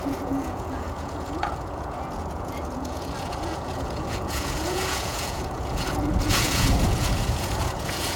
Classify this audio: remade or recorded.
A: remade